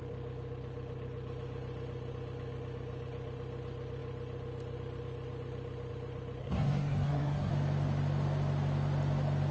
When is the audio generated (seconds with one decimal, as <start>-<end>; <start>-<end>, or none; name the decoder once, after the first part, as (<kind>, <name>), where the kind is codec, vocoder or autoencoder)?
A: 6.4-7.5 (codec, SNAC)